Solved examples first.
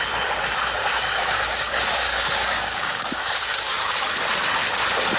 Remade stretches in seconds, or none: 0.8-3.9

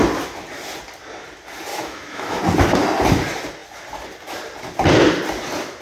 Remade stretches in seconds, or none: 1.7-2.4

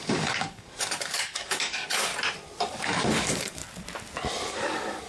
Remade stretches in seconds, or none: 0.0-2.1; 2.7-3.6; 4.5-5.1

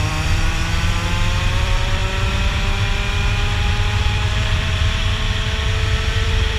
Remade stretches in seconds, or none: 0.0-0.6; 1.5-2.0; 4.0-5.0; 6.1-6.6

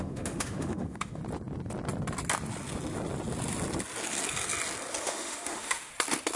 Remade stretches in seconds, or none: 0.0-1.2; 5.0-5.9

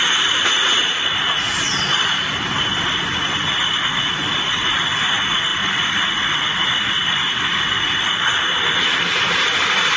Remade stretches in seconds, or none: none